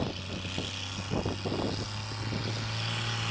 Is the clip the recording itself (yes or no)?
yes